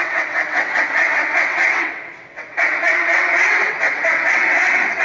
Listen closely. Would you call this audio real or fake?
fake